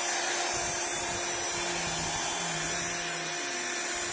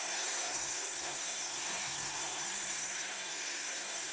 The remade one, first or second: second